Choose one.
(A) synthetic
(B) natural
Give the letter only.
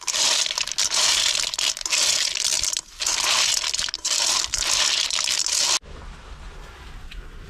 B